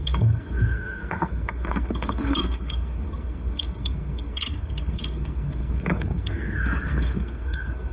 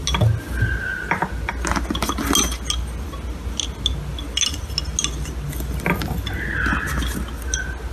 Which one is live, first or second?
second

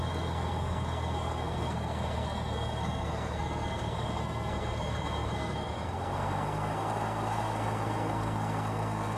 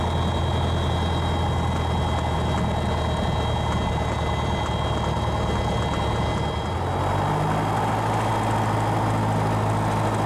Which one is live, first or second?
second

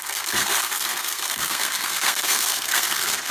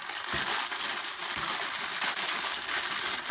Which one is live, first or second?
second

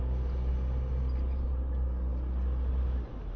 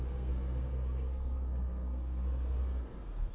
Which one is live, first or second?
first